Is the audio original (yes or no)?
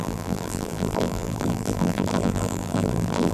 no